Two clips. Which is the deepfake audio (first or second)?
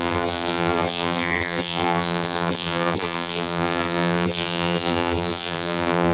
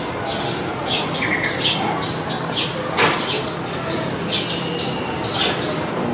first